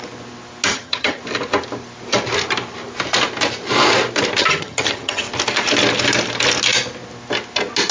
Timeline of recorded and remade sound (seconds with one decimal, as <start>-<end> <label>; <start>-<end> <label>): 0.0-0.7 recorded; 0.7-1.2 remade; 1.2-4.4 recorded; 4.4-5.2 remade; 5.2-7.9 recorded